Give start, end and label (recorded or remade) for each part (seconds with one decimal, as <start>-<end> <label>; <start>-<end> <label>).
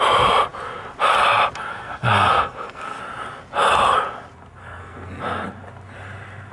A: 0.0-1.7 recorded; 1.7-3.0 remade; 3.0-4.6 recorded; 4.6-5.2 remade; 5.2-6.5 recorded